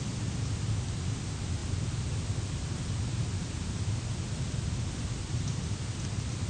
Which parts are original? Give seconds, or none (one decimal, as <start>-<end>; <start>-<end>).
0.0-6.5